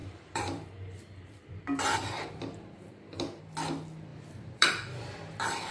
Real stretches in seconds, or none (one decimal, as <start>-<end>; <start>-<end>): 3.4-4.1